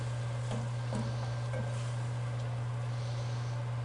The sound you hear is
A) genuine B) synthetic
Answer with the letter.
A